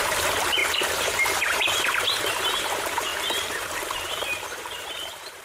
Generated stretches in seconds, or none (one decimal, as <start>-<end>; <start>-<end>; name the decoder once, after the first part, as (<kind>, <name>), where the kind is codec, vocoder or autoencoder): 0.0-5.4 (vocoder, BigVGAN v2)